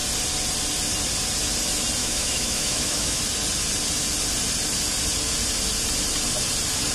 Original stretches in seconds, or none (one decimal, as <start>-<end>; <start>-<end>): 0.0-2.0; 3.2-6.9